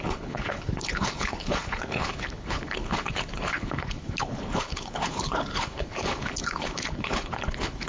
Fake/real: fake